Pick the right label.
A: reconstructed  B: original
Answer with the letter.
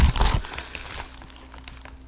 B